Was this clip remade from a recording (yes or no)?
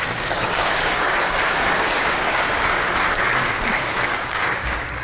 yes